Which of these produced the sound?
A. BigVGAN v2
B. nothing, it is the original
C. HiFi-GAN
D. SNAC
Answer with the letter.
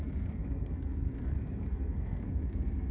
D